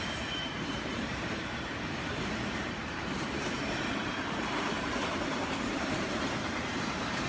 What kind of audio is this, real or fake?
fake